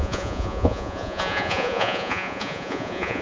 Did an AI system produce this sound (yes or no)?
yes